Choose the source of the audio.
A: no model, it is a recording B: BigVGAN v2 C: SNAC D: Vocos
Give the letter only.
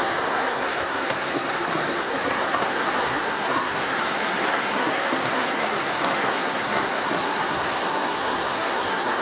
C